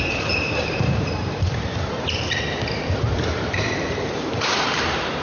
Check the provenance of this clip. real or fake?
fake